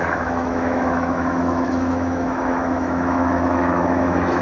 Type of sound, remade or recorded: remade